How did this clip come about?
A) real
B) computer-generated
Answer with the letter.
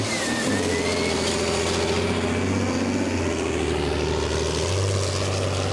A